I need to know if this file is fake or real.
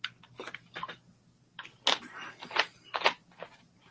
real